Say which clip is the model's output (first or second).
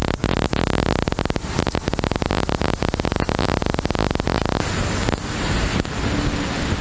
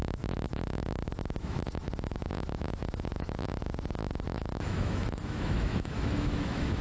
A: second